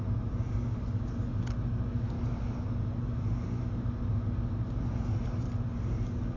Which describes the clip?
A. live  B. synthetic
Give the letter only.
A